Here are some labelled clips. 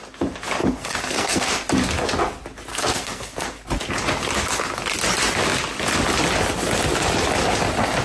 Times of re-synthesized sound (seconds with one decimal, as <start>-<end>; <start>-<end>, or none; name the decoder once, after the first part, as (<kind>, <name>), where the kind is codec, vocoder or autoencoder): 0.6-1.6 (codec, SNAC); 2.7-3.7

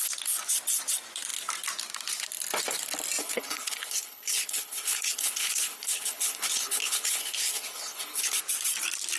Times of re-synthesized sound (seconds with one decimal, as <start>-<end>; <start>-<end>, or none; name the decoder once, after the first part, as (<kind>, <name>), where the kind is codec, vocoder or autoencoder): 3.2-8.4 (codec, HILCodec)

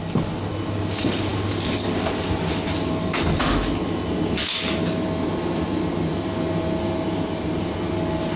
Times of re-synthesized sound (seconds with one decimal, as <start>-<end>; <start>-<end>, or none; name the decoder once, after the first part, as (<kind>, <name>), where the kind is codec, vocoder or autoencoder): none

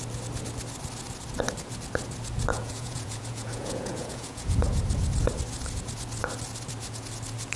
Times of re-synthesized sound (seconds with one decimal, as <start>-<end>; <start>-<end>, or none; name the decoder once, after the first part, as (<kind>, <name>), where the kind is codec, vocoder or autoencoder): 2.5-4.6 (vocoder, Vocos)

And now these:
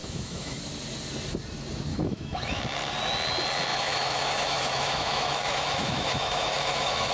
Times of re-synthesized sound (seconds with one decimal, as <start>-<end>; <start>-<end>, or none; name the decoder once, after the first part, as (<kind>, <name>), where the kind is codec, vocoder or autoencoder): 0.0-0.6 (autoencoder, DAC-VAE); 1.9-2.6; 3.7-7.1

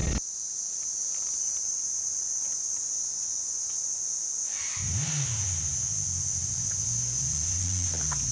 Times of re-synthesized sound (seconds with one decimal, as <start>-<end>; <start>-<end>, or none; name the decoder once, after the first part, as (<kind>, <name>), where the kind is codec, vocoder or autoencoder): 1.7-2.7 (vocoder, Vocos); 3.2-4.5; 6.4-8.3

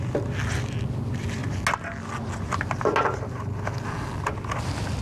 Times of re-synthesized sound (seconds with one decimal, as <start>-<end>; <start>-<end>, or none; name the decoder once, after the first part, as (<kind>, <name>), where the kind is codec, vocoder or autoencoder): none